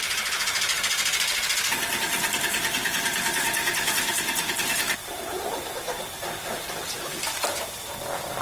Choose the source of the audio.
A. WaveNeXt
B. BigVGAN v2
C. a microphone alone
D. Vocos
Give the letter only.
B